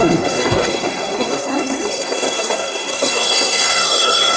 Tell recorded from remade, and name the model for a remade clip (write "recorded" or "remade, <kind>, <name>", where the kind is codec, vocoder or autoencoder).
remade, codec, SNAC